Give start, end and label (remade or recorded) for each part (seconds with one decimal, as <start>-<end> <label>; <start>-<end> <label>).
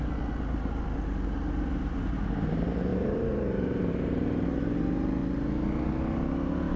0.0-2.9 recorded; 2.9-3.9 remade; 3.9-6.8 recorded